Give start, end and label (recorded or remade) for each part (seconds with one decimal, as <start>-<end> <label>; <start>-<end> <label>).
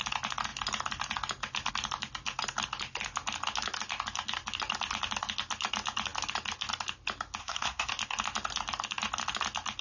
0.0-7.4 recorded; 7.4-7.9 remade; 7.9-9.8 recorded